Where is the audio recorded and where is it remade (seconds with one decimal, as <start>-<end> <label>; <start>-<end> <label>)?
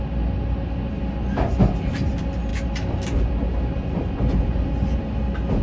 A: 0.0-5.6 recorded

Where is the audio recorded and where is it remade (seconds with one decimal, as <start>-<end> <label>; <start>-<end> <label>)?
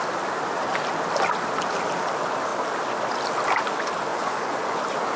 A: 0.0-4.1 recorded; 4.1-4.8 remade; 4.8-5.2 recorded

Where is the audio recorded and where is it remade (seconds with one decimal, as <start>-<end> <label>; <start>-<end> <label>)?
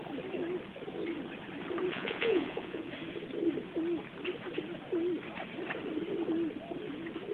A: 0.0-1.9 recorded; 1.9-2.9 remade; 2.9-7.3 recorded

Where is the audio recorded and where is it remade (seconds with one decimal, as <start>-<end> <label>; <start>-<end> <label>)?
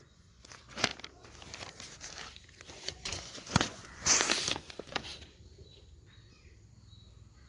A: 0.0-0.9 remade; 0.9-2.7 recorded; 2.7-5.1 remade; 5.1-7.5 recorded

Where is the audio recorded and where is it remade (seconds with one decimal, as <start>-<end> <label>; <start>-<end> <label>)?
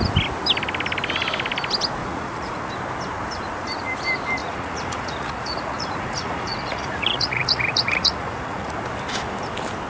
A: 0.0-2.0 recorded; 2.0-2.7 remade; 2.7-4.4 recorded; 4.4-8.8 remade; 8.8-9.9 recorded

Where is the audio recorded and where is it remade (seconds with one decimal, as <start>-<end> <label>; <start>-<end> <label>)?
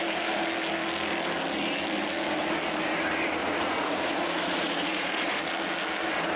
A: 0.0-3.4 recorded; 3.4-5.4 remade; 5.4-6.4 recorded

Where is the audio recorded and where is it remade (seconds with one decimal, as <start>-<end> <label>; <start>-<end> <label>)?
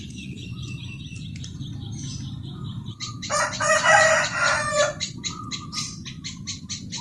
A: 0.0-1.0 remade; 1.0-3.0 recorded; 3.0-5.5 remade; 5.5-7.0 recorded